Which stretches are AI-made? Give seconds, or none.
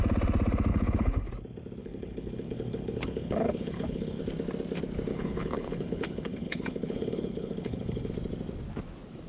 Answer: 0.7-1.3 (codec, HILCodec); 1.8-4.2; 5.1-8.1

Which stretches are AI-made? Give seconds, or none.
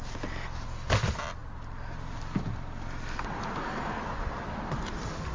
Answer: none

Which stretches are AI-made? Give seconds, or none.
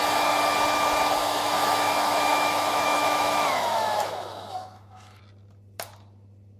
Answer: 1.2-5.2 (autoencoder, DAC-VAE)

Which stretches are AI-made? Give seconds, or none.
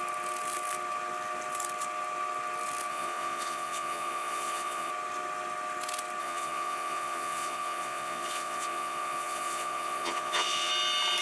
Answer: 2.9-4.9 (vocoder, Vocos); 6.2-10.7